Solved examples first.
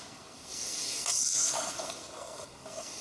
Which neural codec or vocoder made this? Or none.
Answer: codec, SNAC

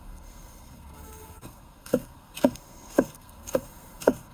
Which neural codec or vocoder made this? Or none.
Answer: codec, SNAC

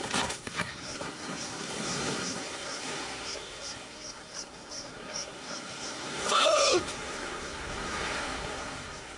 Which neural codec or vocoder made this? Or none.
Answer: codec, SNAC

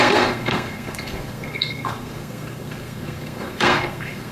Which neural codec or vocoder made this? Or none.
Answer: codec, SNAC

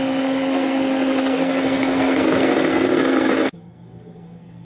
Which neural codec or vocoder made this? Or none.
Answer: codec, SNAC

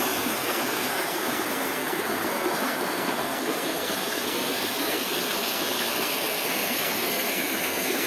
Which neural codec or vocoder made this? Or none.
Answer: codec, SNAC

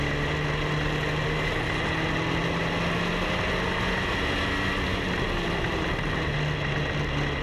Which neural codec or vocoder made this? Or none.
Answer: none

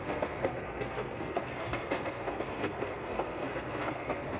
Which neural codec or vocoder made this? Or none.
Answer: codec, SNAC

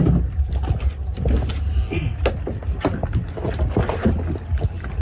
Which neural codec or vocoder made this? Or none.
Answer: none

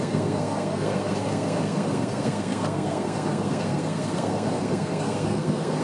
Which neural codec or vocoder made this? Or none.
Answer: codec, SNAC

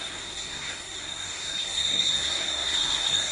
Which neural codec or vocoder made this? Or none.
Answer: codec, SNAC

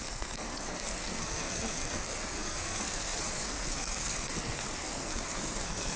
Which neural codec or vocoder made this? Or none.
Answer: codec, SNAC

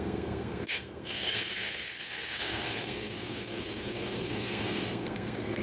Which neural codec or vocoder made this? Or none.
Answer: codec, SNAC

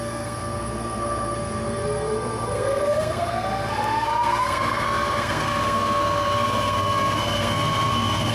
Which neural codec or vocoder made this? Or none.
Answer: codec, SNAC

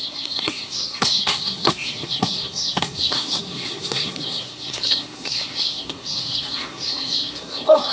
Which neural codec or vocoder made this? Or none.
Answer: codec, SNAC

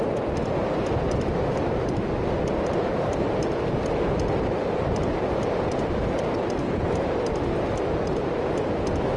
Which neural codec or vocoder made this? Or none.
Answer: none